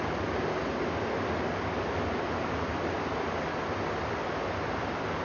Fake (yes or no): yes